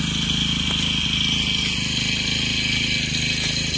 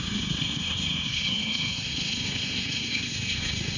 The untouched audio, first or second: first